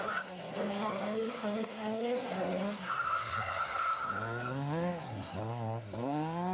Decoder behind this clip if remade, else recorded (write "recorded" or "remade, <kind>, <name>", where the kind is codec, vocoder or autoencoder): remade, codec, SNAC